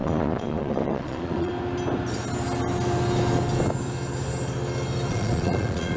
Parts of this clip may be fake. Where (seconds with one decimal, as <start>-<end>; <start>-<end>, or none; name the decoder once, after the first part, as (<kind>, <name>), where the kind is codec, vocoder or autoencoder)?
0.0-1.5 (vocoder, Vocos); 5.1-6.0